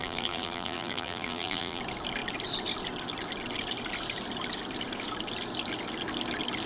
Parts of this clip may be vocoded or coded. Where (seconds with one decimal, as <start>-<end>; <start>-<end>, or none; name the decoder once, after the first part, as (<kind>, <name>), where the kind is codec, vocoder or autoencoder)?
0.0-1.8 (vocoder, BigVGAN v2)